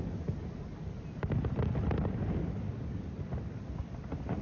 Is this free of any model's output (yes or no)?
yes